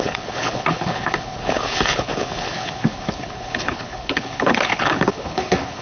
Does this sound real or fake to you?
fake